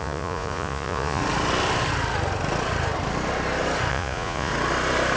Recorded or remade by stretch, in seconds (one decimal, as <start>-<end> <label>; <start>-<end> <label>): 0.0-1.2 remade; 1.2-3.9 recorded; 3.9-4.5 remade; 4.5-5.2 recorded